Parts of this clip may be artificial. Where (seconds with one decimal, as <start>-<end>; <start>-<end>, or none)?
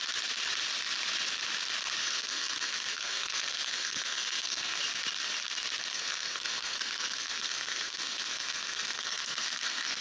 2.0-4.8; 5.9-10.0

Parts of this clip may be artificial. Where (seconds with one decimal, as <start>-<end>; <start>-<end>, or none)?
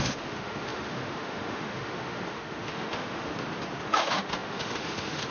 0.0-3.3; 3.9-5.3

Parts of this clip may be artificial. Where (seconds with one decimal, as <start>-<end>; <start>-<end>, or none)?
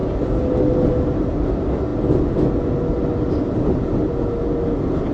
none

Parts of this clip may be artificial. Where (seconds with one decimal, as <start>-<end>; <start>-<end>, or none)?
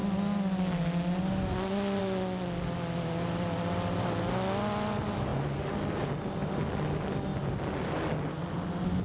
none